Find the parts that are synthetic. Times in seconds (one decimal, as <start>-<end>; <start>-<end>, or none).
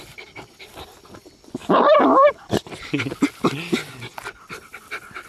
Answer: 1.6-3.0